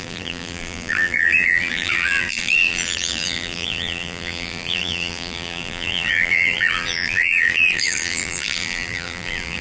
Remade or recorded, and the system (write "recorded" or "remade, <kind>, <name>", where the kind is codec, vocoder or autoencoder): remade, vocoder, BigVGAN v2